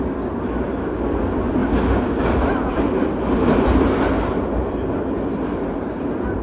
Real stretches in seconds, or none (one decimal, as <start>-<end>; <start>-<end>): 0.0-6.4